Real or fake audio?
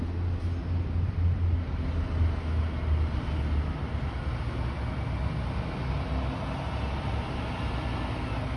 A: real